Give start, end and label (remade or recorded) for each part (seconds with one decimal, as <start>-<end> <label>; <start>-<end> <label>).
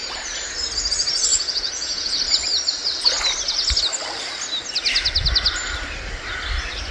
0.0-1.3 recorded; 1.3-2.2 remade; 2.2-6.9 recorded